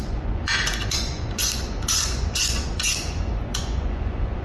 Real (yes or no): no